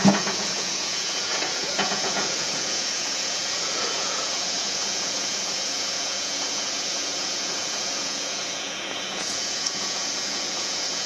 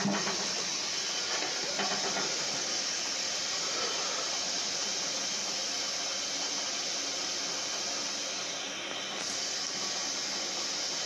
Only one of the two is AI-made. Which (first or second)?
first